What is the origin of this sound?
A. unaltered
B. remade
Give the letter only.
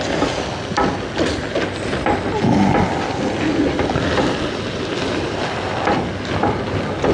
A